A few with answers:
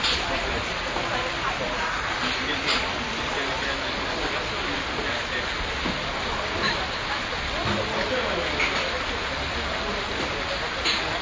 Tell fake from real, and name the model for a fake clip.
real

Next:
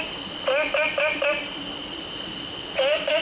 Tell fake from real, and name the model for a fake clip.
real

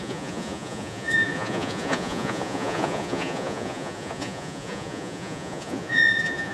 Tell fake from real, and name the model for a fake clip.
fake, vocoder, Vocos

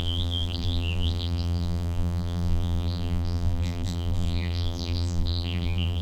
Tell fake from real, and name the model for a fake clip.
fake, vocoder, BigVGAN v2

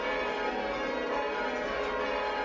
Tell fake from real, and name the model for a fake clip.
real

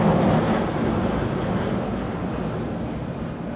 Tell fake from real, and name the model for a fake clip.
real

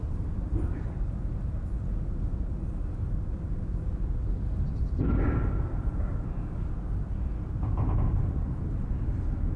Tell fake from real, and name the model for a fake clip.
real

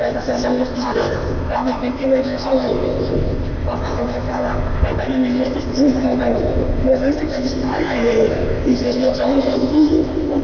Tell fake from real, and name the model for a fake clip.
fake, codec, ZipCodec